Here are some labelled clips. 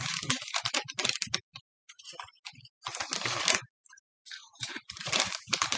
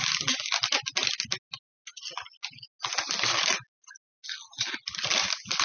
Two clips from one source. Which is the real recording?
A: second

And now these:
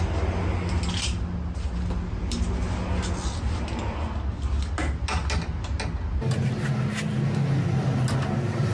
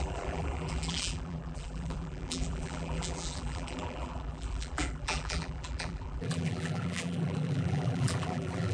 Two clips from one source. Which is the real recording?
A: first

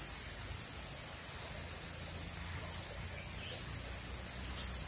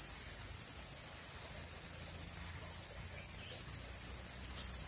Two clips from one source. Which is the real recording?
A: first